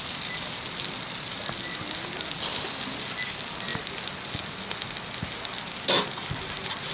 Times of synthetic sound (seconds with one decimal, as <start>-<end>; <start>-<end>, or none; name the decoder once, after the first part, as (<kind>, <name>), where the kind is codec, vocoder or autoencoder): none